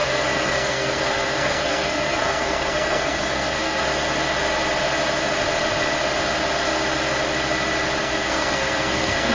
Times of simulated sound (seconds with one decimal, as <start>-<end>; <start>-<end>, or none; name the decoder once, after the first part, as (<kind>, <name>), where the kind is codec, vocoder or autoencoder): 0.0-3.8 (codec, SNAC); 8.0-9.3